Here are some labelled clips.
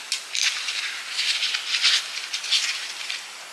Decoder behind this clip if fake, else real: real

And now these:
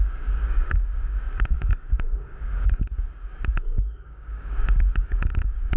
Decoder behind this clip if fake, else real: fake, codec, DAC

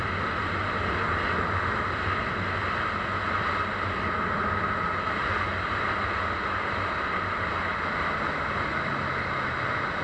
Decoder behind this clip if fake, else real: real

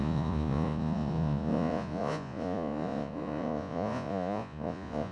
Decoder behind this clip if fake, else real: fake, vocoder, Vocos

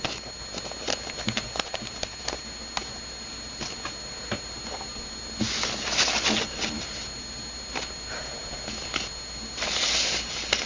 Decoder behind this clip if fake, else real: real